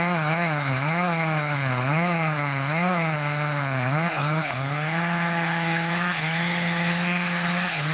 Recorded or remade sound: remade